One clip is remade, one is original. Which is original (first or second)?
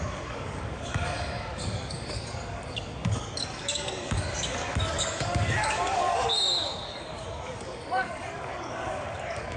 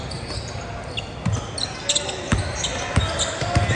second